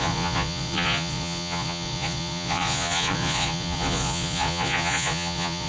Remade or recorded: remade